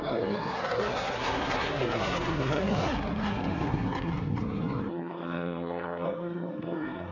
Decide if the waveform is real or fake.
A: fake